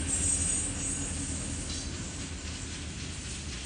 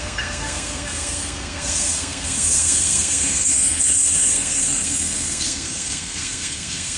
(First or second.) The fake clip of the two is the second